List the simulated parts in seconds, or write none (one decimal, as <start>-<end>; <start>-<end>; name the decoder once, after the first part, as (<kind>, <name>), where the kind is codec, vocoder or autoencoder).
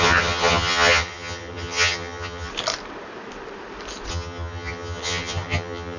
0.0-2.5 (vocoder, HiFi-GAN); 4.1-6.0